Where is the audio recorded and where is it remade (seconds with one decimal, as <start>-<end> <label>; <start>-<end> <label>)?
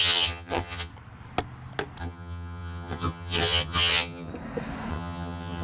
0.0-0.9 remade; 0.9-2.0 recorded; 2.0-4.3 remade; 4.3-4.9 recorded; 4.9-5.6 remade